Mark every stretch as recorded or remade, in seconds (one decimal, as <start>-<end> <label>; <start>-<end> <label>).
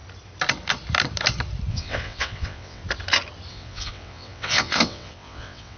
0.0-1.7 recorded; 1.7-2.8 remade; 2.8-3.5 recorded; 3.5-5.8 remade